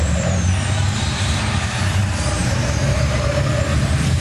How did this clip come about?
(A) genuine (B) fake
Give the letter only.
B